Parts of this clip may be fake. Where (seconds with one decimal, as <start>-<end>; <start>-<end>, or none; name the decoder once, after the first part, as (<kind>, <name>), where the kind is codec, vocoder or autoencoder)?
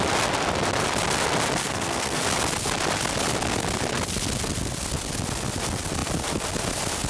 1.6-2.2 (codec, SNAC)